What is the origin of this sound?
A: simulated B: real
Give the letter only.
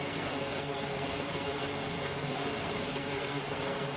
A